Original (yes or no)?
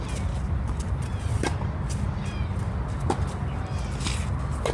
yes